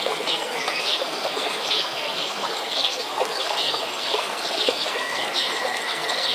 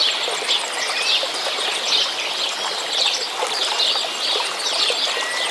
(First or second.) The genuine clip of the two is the second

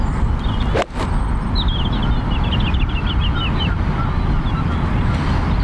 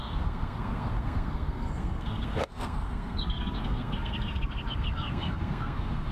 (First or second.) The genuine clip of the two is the first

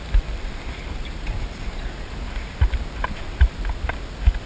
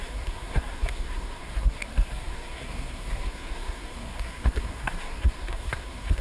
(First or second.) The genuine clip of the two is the first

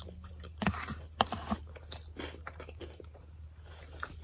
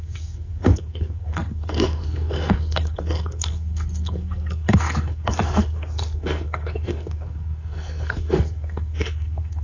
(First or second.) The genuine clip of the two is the first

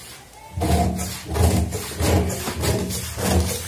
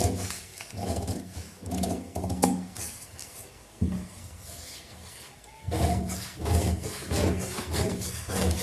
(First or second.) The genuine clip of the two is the first